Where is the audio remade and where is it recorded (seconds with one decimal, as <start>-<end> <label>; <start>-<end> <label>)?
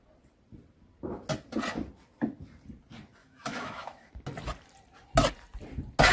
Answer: 0.0-3.2 recorded; 3.2-4.1 remade; 4.1-6.1 recorded